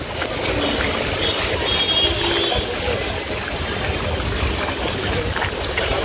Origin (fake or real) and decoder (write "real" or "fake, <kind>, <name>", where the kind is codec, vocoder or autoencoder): real